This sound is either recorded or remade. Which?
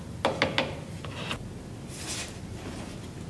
recorded